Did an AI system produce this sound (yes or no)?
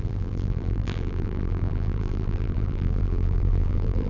yes